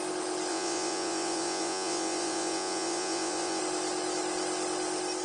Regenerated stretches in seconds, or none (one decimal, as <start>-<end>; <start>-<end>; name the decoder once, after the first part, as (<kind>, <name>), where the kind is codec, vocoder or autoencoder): 0.5-3.6 (vocoder, Vocos)